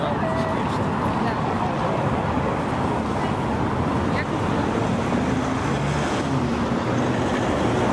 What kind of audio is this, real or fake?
real